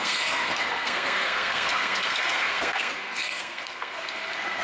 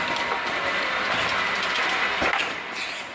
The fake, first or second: first